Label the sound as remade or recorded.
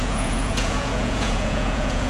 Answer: remade